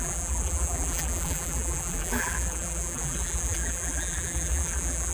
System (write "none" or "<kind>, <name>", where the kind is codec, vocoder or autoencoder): vocoder, BigVGAN v2